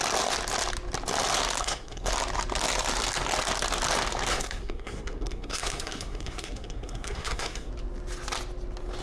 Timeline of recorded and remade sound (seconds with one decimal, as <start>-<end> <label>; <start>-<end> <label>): 0.0-1.6 recorded; 1.6-2.1 remade; 2.1-4.3 recorded; 4.3-7.7 remade; 7.7-9.0 recorded